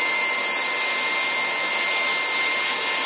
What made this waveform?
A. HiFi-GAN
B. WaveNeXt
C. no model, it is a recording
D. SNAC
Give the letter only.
C